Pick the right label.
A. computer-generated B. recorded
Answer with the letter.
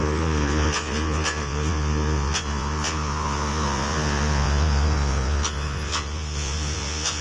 A